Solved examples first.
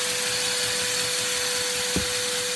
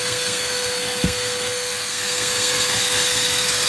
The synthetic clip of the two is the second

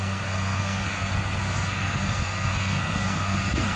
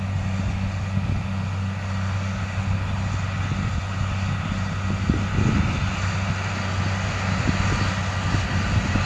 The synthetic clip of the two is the first